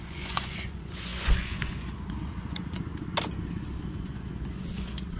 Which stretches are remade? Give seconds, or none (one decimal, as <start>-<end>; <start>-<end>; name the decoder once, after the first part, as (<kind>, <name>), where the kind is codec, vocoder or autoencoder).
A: 0.0-2.9 (vocoder, Vocos); 3.9-5.2